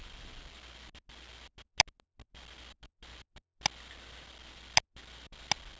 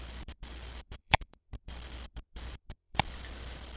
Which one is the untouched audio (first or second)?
first